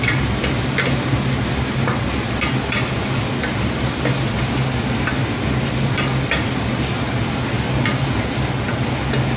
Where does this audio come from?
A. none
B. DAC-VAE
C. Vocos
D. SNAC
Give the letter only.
A